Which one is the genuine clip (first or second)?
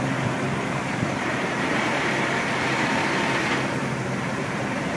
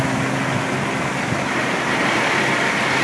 second